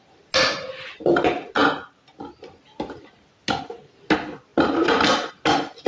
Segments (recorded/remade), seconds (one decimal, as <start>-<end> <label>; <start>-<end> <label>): 0.0-5.9 recorded